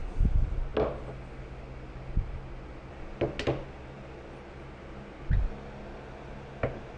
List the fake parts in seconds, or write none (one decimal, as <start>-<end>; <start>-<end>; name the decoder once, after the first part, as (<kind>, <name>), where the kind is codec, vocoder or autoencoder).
none